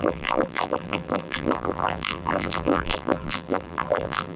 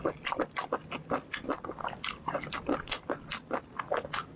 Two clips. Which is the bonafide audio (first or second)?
second